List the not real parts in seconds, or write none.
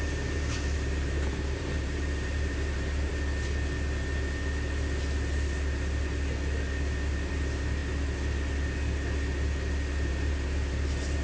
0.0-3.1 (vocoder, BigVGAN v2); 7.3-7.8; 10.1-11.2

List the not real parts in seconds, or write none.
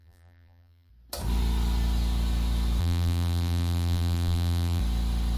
0.0-0.9 (vocoder, BigVGAN v2); 2.8-4.8